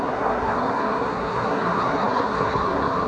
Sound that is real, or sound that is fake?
fake